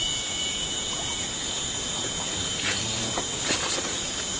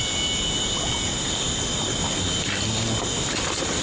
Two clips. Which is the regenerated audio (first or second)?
first